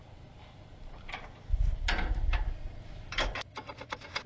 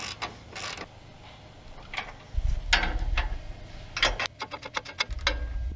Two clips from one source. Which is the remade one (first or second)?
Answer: first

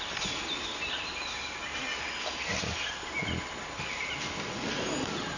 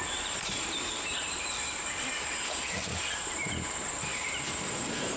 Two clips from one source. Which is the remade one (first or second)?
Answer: second